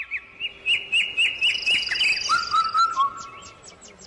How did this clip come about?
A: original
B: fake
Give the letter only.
A